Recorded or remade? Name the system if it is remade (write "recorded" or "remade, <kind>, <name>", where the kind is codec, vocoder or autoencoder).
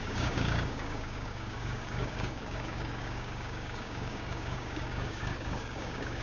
remade, codec, DAC